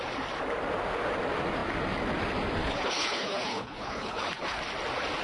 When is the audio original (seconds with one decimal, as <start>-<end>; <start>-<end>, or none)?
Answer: 0.0-2.6; 4.6-5.2

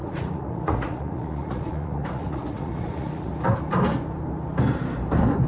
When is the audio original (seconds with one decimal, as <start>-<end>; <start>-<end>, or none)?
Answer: 3.3-5.5

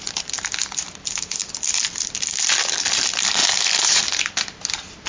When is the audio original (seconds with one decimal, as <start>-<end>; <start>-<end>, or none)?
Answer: 0.0-1.4; 2.8-5.1

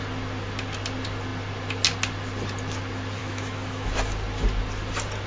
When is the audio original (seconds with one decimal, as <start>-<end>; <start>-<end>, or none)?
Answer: 0.0-3.2; 3.9-5.3